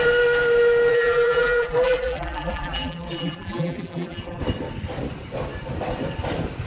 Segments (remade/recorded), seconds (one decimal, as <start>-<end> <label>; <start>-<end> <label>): 0.0-0.9 recorded; 0.9-4.4 remade; 4.4-6.7 recorded